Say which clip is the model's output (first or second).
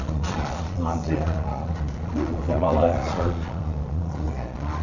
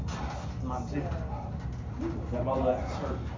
first